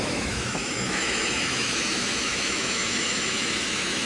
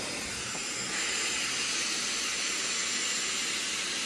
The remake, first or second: first